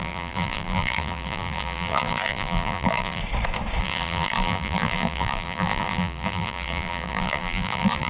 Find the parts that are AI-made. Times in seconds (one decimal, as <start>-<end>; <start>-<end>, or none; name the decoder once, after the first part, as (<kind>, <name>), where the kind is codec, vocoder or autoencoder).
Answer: 0.0-3.2 (vocoder, BigVGAN v2); 3.8-8.1